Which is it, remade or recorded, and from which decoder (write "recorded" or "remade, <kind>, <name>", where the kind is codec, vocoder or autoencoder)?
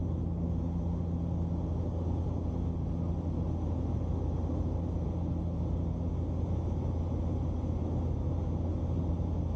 recorded